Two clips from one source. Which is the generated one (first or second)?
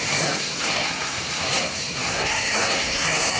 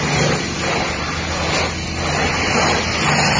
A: first